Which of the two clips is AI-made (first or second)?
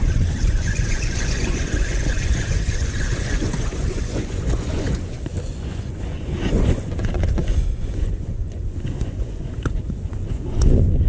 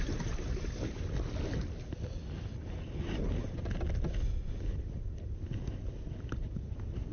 first